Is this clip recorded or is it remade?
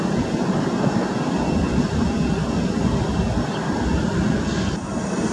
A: recorded